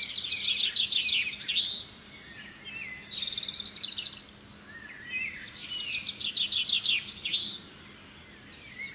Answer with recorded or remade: recorded